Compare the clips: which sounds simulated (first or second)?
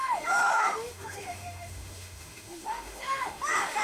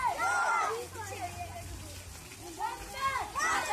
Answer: first